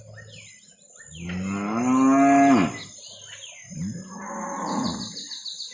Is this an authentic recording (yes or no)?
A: yes